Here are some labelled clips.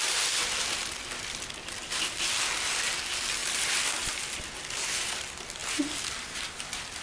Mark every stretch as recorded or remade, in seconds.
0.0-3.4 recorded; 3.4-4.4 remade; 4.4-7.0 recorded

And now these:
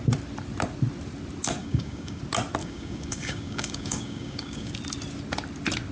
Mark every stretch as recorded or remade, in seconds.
0.0-1.6 recorded; 1.6-2.2 remade; 2.2-2.6 recorded; 2.6-4.7 remade; 4.7-5.9 recorded

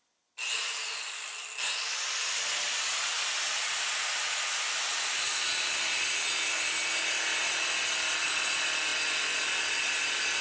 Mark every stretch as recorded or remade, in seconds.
0.0-10.4 recorded

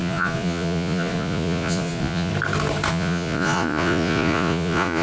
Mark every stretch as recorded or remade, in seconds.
0.0-2.3 remade; 2.3-2.9 recorded; 2.9-5.0 remade

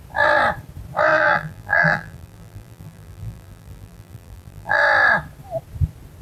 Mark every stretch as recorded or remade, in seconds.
0.0-1.1 recorded; 1.1-4.8 remade; 4.8-6.2 recorded

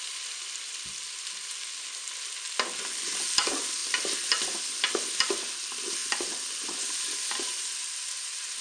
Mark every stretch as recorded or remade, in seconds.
0.0-8.6 recorded